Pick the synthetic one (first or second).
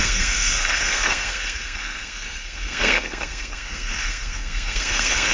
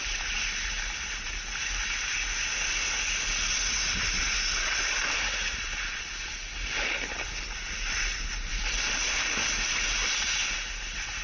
first